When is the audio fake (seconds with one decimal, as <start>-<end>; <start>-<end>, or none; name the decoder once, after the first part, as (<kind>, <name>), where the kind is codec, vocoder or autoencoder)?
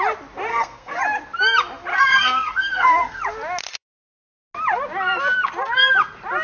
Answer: 0.5-1.0 (codec, SNAC); 1.9-3.2